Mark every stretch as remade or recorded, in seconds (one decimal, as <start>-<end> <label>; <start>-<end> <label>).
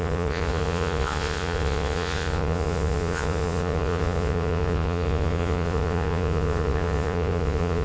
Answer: 0.0-7.8 remade